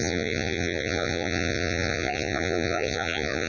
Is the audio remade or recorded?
remade